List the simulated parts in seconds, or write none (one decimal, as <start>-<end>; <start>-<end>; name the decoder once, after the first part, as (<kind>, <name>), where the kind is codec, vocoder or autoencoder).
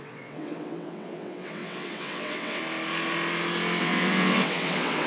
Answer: 0.0-2.6 (vocoder, WaveNeXt); 3.8-5.1